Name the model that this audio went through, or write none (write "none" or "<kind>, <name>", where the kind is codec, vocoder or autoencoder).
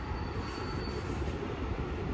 none